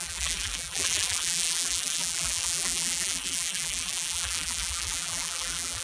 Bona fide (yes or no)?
no